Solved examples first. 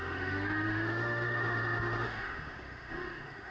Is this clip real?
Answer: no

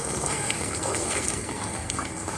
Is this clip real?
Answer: no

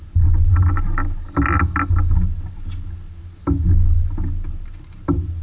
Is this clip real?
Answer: yes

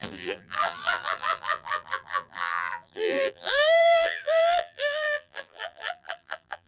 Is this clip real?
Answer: no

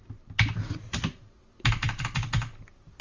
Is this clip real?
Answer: yes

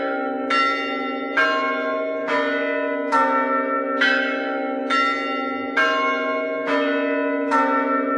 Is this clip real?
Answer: yes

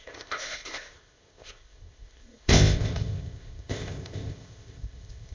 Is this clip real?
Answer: no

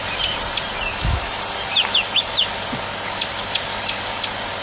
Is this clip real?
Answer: yes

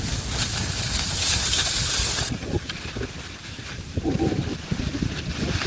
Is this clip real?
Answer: no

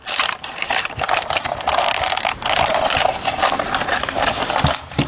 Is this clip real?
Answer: yes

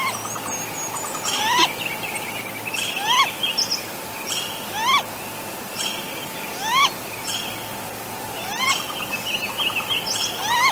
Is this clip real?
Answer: yes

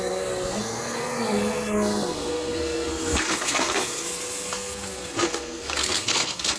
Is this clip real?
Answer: no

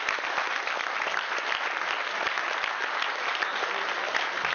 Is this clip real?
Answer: yes